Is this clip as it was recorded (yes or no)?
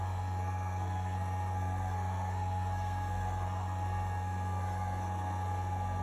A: no